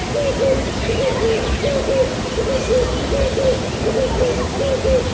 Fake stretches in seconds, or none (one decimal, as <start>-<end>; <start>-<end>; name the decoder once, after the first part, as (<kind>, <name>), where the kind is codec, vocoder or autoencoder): none